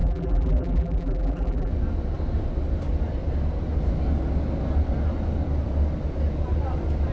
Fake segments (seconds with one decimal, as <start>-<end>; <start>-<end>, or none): 0.0-1.7